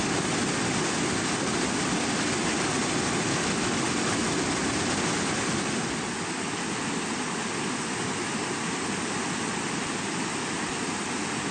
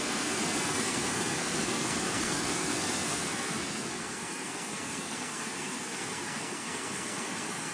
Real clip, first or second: first